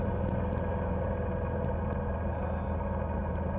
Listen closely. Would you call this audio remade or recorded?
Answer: recorded